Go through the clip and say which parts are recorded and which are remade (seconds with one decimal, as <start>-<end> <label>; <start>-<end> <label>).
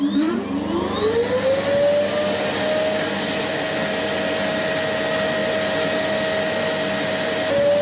0.0-7.8 recorded